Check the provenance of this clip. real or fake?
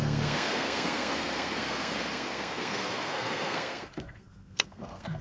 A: fake